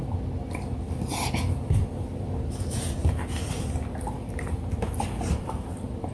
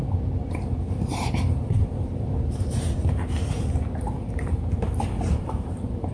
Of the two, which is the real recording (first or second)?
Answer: first